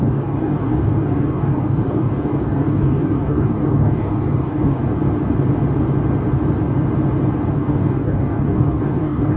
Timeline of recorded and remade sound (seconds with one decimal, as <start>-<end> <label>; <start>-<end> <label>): 0.0-4.8 remade; 4.8-7.5 recorded; 7.5-9.4 remade